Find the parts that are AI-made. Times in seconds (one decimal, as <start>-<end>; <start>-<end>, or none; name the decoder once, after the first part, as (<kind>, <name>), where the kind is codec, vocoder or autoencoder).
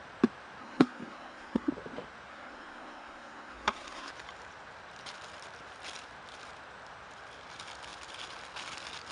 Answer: 0.6-1.7 (codec, SNAC); 2.3-4.1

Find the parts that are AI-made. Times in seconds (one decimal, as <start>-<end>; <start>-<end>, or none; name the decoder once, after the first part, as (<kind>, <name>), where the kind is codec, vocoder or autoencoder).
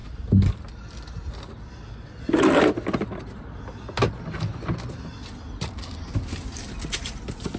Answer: none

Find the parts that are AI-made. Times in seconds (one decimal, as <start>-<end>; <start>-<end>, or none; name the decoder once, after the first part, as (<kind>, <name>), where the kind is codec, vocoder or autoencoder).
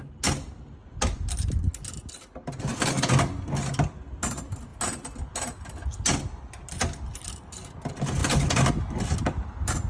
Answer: none